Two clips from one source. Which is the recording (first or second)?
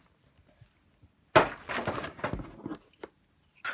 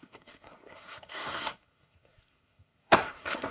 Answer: first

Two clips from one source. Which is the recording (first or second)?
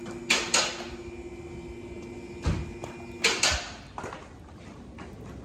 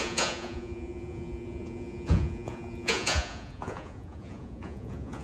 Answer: first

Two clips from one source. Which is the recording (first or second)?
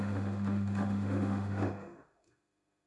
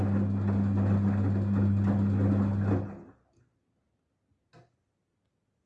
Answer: second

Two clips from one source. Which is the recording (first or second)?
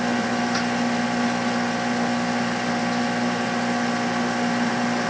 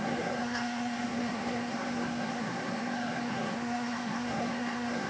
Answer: first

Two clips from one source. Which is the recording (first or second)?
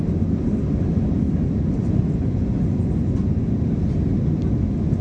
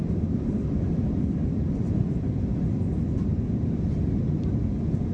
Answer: first